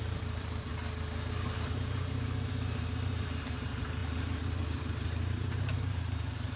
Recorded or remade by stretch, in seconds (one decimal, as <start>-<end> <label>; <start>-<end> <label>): 0.0-0.7 remade; 0.7-1.3 recorded; 1.3-6.6 remade